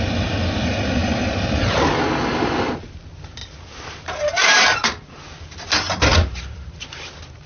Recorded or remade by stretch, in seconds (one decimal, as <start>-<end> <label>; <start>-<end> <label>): 0.0-3.4 recorded; 3.4-5.6 remade; 5.6-6.1 recorded; 6.1-6.8 remade; 6.8-7.5 recorded

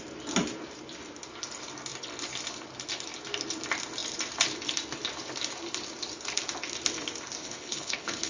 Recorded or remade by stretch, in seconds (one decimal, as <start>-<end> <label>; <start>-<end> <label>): 0.0-7.4 recorded; 7.4-8.3 remade

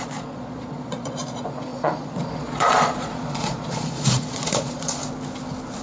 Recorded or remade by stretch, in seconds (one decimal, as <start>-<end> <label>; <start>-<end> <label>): 0.0-5.0 remade; 5.0-5.8 recorded

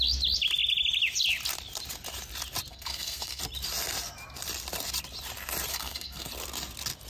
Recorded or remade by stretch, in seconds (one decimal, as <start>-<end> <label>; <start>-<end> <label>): 0.0-2.7 recorded; 2.7-3.4 remade; 3.4-5.7 recorded; 5.7-6.3 remade; 6.3-7.1 recorded

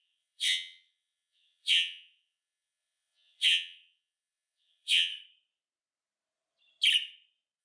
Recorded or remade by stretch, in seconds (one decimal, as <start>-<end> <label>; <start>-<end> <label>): 0.0-5.1 remade; 5.1-7.6 recorded

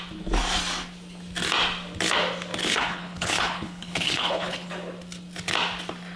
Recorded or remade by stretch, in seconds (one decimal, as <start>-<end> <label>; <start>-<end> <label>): 0.0-2.6 recorded; 2.6-4.7 remade; 4.7-6.2 recorded

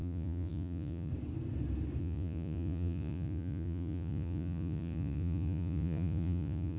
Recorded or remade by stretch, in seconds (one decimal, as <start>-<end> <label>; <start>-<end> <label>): 0.0-1.1 remade; 1.1-2.0 recorded; 2.0-6.8 remade